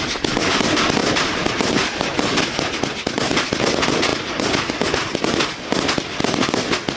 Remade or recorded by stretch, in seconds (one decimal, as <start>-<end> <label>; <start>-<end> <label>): 0.0-1.0 recorded; 1.0-1.5 remade; 1.5-4.1 recorded; 4.1-4.7 remade; 4.7-7.0 recorded